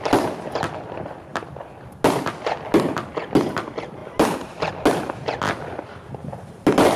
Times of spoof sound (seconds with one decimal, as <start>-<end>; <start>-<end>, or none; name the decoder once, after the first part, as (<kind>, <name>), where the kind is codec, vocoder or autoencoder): none